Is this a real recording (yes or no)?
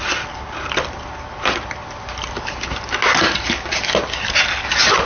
yes